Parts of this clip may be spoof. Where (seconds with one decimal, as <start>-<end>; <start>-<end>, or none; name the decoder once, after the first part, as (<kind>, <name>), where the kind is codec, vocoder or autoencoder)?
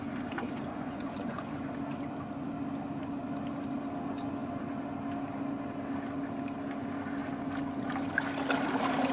0.7-1.7 (vocoder, Vocos)